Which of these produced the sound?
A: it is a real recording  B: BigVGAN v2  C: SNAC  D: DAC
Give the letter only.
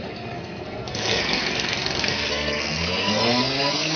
C